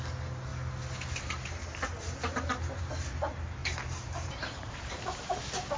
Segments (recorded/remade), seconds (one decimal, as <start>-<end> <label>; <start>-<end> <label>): 0.0-3.6 recorded; 3.6-5.2 remade; 5.2-5.8 recorded